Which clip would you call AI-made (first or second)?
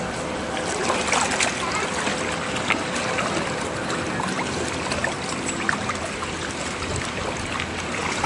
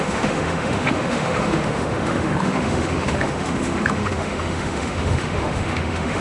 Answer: second